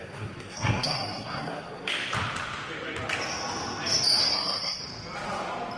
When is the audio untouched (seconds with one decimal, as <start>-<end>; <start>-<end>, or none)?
1.9-4.2; 4.8-5.8